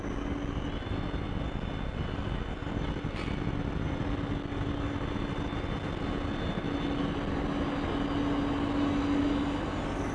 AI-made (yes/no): no